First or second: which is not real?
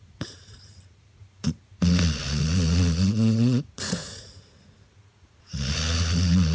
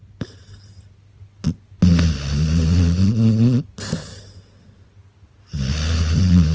first